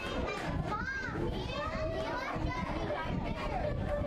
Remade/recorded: remade